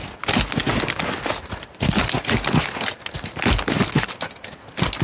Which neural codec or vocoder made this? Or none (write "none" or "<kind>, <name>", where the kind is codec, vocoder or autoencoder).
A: none